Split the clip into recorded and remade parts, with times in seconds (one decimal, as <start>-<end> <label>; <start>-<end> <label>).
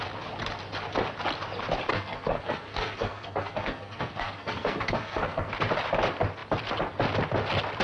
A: 0.0-1.9 recorded; 1.9-5.5 remade; 5.5-7.8 recorded